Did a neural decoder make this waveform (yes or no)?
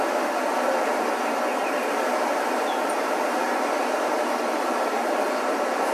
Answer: yes